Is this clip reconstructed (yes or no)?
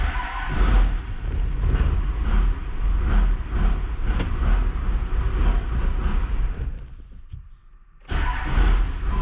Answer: no